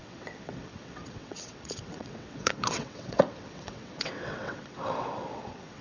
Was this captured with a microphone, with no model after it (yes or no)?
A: no